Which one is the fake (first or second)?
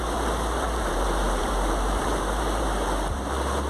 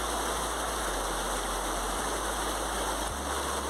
first